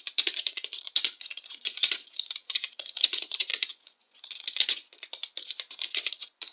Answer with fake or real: fake